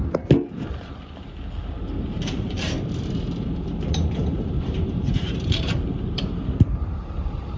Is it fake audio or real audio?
fake